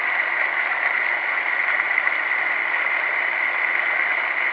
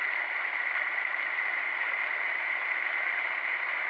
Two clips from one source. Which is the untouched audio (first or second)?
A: first